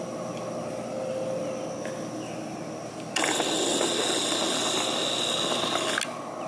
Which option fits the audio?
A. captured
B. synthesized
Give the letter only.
A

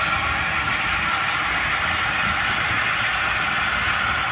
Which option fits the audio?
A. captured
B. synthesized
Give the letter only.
A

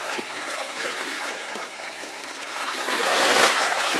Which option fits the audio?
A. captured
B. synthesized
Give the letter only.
B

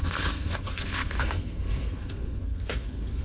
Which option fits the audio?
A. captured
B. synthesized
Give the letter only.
B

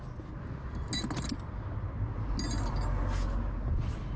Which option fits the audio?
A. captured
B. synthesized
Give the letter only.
A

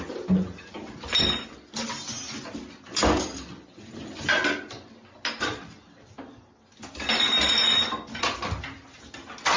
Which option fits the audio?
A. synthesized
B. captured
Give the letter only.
B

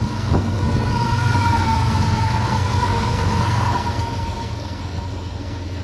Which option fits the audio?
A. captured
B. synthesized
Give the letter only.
B